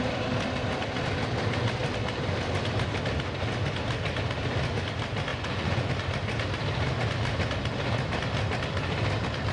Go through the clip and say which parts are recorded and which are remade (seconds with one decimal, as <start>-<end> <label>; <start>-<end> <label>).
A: 0.0-5.3 recorded; 5.3-5.9 remade; 5.9-9.5 recorded